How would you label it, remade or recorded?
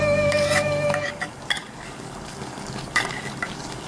remade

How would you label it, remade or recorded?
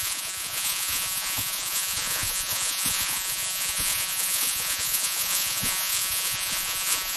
remade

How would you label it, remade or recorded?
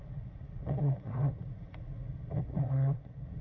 remade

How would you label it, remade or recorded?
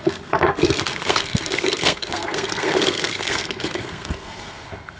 remade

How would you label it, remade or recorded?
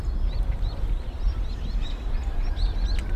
recorded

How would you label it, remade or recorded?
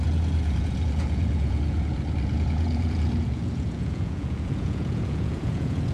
remade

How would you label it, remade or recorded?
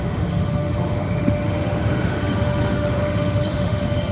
remade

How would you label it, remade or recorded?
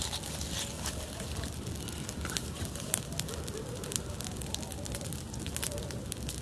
recorded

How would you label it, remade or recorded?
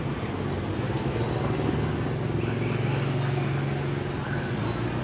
recorded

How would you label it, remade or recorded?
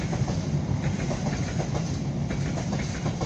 recorded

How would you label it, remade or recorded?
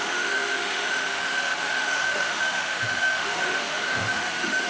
remade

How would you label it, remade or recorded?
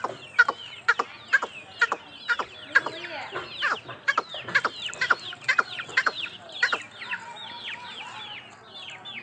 recorded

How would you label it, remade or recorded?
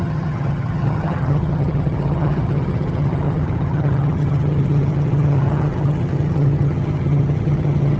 remade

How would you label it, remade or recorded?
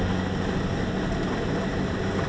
recorded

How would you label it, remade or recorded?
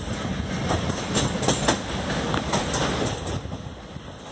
recorded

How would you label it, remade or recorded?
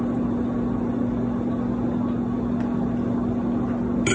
recorded